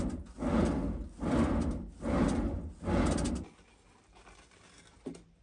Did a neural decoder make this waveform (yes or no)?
no